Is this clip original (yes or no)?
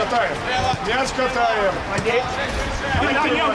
yes